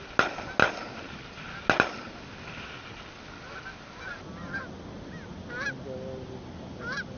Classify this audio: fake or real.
real